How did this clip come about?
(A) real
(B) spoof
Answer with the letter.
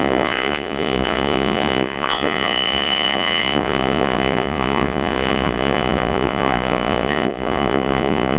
B